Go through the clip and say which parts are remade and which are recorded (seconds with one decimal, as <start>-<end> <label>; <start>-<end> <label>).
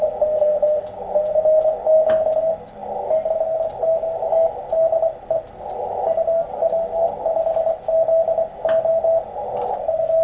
0.0-10.2 recorded